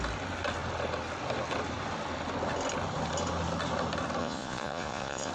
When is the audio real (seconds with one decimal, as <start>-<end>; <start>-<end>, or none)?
0.0-4.2

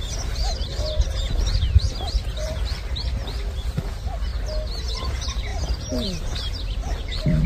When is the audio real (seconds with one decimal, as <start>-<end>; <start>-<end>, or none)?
3.2-3.9; 4.3-5.0

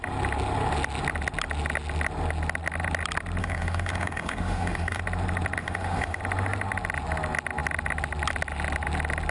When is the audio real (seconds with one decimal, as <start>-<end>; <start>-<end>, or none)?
0.0-3.4; 5.0-5.6; 6.2-9.3

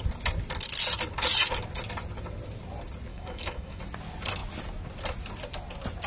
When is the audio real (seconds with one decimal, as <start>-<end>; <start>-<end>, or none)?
0.0-3.1; 3.8-6.1

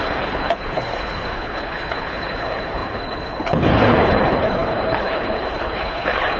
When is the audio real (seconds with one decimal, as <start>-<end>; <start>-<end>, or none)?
none

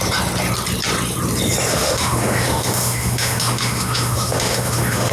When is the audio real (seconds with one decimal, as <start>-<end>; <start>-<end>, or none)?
0.0-1.7

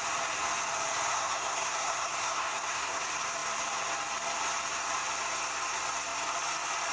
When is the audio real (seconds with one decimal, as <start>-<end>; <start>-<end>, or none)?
0.0-1.1; 3.0-6.9